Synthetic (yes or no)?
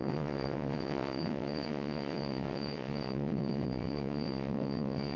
yes